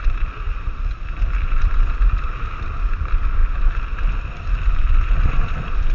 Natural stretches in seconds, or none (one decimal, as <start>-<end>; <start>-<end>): 0.0-5.9